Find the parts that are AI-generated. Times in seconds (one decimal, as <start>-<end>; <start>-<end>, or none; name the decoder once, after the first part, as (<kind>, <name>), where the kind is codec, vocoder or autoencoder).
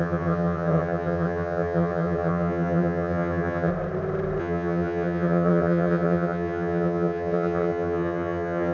0.0-3.7 (vocoder, HiFi-GAN); 4.4-8.7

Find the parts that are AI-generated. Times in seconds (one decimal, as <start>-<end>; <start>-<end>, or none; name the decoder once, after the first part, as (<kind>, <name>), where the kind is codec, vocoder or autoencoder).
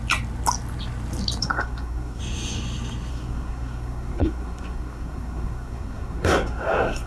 1.4-2.2 (codec, SNAC); 3.1-7.1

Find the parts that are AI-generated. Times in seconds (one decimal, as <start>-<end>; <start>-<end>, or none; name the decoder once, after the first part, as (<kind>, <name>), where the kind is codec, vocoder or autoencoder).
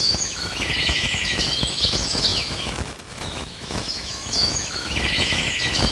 0.0-5.9 (autoencoder, DAC-VAE)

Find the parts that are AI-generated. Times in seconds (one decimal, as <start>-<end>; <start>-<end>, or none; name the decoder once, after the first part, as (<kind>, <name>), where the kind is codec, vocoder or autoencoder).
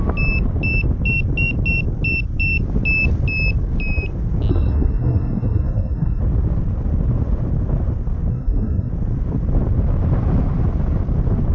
4.5-6.2 (codec, SNAC); 8.3-8.9